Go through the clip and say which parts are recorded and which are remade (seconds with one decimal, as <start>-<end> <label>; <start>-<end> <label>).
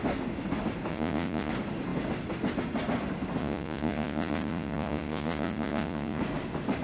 0.0-0.9 recorded; 0.9-1.5 remade; 1.5-3.4 recorded; 3.4-6.2 remade; 6.2-6.8 recorded